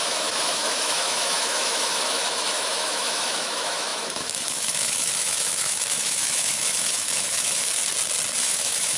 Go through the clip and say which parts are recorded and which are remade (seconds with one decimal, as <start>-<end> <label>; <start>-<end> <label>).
0.0-7.8 remade; 7.8-8.4 recorded; 8.4-9.0 remade